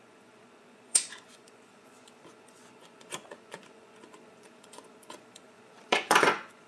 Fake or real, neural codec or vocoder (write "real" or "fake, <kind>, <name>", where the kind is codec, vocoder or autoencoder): fake, vocoder, Vocos